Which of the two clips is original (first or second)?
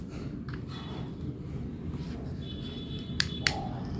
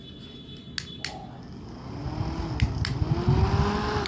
second